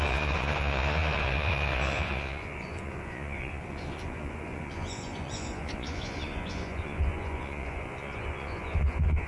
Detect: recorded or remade remade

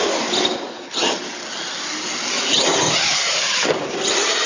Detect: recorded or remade recorded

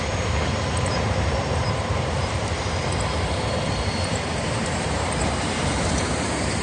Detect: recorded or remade remade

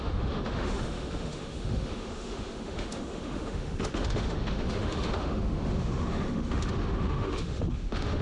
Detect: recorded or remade remade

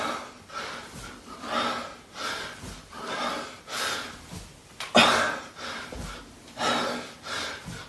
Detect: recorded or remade recorded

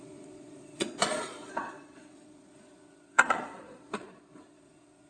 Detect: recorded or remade remade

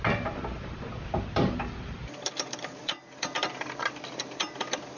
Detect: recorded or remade remade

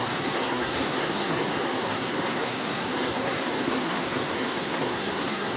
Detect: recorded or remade remade